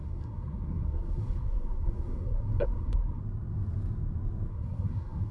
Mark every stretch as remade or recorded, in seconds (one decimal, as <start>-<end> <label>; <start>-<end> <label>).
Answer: 0.0-3.2 remade; 3.2-4.5 recorded; 4.5-5.3 remade